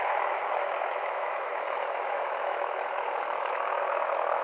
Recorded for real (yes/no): no